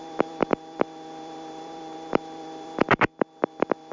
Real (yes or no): no